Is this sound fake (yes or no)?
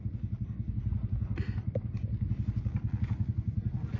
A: no